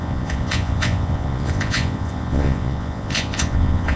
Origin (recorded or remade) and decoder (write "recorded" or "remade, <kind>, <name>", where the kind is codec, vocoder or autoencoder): remade, vocoder, Vocos